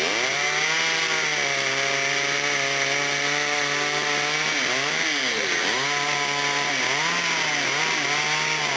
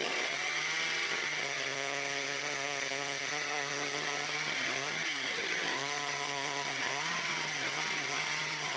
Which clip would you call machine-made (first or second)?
second